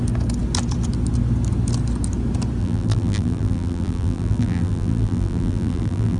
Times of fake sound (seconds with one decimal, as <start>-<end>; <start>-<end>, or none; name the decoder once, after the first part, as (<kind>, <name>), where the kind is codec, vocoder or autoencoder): 2.6-6.2 (vocoder, BigVGAN v2)